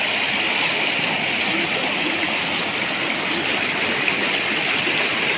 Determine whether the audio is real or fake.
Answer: real